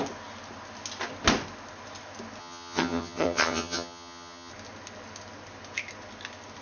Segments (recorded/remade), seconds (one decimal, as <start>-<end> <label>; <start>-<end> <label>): 0.0-2.4 recorded; 2.4-4.5 remade; 4.5-6.6 recorded